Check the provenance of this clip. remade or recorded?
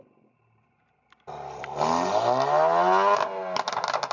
recorded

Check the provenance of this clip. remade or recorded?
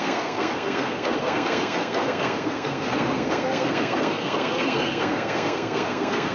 remade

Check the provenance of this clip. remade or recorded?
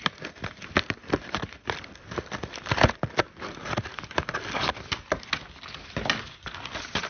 recorded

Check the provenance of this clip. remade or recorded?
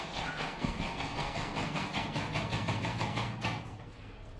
remade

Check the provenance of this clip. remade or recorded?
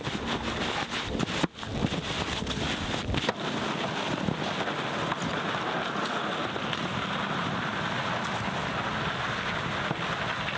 recorded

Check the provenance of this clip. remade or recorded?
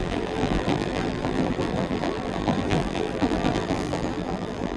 remade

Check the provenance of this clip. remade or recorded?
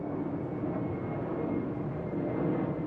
recorded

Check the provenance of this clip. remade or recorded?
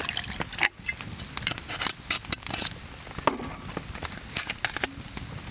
recorded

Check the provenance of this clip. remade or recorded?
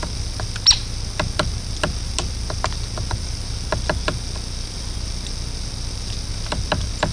recorded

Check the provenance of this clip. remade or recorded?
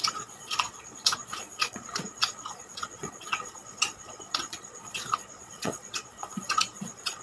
remade